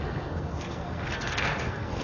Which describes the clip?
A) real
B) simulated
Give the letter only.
B